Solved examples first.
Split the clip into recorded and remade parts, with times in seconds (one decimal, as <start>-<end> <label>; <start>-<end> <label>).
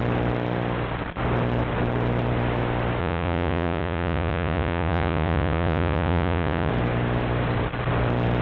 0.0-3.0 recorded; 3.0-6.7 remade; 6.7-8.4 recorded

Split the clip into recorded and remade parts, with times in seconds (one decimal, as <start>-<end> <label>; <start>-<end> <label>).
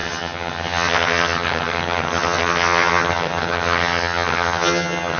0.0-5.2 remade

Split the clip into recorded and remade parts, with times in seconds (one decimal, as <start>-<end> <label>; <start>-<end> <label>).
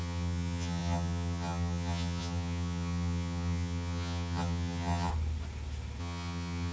0.0-5.1 remade; 5.1-6.0 recorded; 6.0-6.7 remade